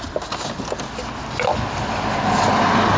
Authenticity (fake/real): real